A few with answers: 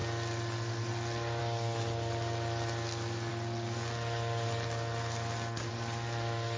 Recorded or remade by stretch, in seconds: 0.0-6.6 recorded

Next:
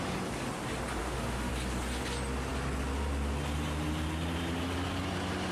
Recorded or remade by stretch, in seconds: 0.0-1.0 recorded; 1.0-1.5 remade; 1.5-5.5 recorded

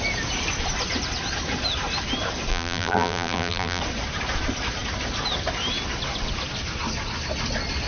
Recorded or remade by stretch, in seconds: 0.0-2.5 recorded; 2.5-3.8 remade; 3.8-7.9 recorded

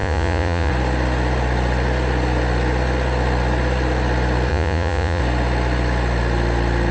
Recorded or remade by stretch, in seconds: 0.0-0.7 remade; 0.7-4.5 recorded; 4.5-5.2 remade; 5.2-6.9 recorded

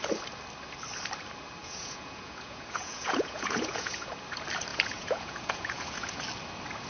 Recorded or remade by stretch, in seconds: 0.0-1.6 recorded; 1.6-4.1 remade; 4.1-4.7 recorded; 4.7-6.2 remade; 6.2-6.9 recorded

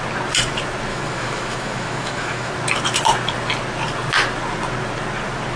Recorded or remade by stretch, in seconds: 0.0-0.9 recorded; 0.9-2.5 remade; 2.5-5.6 recorded